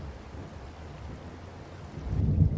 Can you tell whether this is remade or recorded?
recorded